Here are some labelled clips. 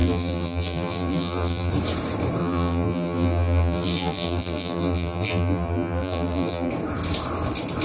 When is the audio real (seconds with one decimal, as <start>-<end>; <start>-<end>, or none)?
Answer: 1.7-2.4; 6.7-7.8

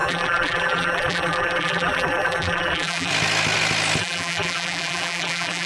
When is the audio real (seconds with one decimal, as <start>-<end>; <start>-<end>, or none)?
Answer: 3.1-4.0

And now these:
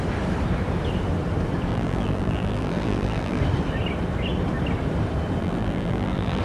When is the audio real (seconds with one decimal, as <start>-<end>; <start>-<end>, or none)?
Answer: 0.0-1.7; 3.4-5.4

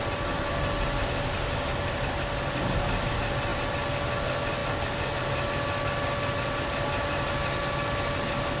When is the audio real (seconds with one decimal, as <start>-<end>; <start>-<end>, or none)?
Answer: 0.0-8.6

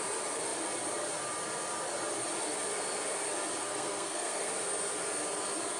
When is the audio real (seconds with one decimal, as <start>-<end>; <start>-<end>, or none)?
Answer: 0.0-3.6; 4.5-5.8

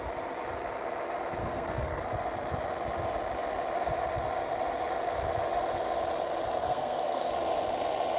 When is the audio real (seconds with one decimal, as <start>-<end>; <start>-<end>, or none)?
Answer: 0.0-1.4; 2.0-6.6; 7.3-8.2